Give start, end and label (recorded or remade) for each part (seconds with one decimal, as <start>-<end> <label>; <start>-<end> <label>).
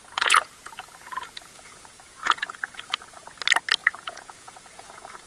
0.0-3.2 remade; 3.2-3.8 recorded; 3.8-5.3 remade